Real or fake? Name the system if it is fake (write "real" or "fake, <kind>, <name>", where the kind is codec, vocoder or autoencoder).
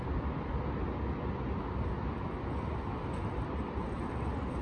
real